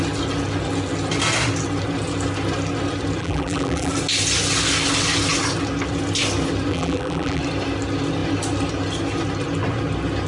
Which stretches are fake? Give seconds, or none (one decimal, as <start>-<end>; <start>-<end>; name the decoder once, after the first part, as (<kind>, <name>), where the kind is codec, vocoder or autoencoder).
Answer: 3.2-3.9 (vocoder, BigVGAN v2); 6.7-7.4